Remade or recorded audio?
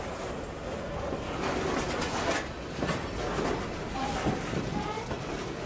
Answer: recorded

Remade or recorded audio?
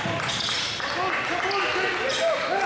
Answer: recorded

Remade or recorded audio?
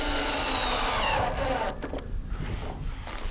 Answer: recorded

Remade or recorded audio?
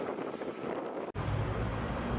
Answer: remade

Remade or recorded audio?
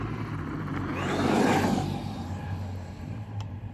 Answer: recorded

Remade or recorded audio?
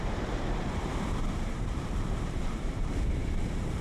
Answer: remade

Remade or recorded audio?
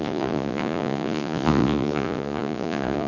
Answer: remade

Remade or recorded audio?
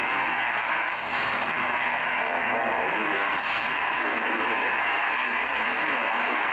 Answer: remade